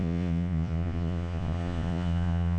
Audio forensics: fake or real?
fake